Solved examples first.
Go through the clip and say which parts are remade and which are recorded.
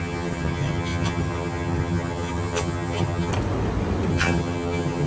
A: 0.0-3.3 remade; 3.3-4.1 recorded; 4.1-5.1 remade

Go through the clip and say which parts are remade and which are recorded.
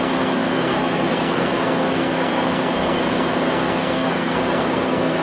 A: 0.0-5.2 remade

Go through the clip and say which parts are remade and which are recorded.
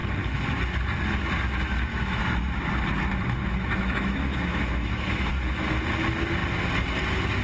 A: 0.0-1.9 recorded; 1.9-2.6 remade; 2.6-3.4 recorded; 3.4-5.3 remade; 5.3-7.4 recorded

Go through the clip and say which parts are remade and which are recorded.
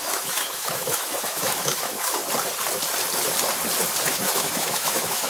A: 0.0-2.2 remade; 2.2-4.1 recorded; 4.1-5.3 remade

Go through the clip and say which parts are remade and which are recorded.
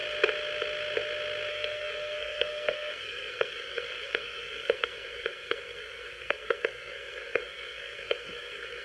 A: 0.0-1.5 recorded; 1.5-8.8 remade